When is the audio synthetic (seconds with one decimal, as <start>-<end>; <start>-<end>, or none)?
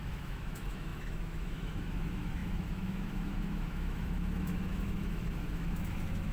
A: 0.0-6.3